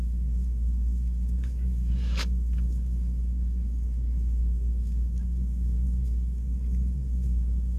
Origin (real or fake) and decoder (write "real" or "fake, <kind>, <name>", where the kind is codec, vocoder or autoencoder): fake, codec, DAC